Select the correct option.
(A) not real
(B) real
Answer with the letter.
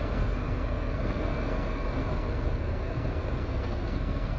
A